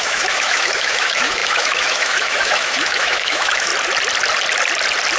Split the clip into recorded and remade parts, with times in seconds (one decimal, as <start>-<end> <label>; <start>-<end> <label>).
0.0-3.7 remade; 3.7-5.2 recorded